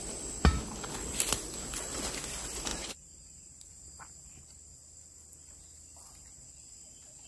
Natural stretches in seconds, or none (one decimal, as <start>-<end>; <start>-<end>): 0.0-2.7; 3.7-7.3